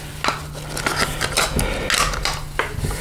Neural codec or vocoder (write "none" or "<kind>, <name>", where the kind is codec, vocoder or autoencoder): none